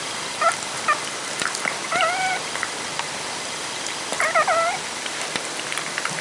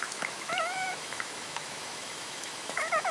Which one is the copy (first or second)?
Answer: second